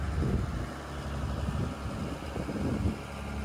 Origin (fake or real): real